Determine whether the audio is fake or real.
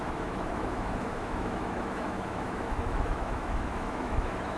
fake